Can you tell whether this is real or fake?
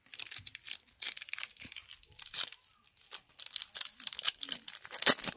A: fake